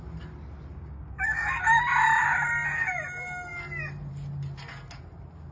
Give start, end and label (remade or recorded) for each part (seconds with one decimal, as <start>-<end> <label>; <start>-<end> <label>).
0.0-0.7 recorded; 0.7-1.6 remade; 1.6-5.5 recorded